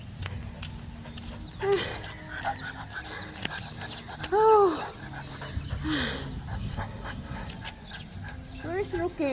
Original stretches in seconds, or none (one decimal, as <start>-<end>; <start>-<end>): 0.0-6.5; 7.5-9.3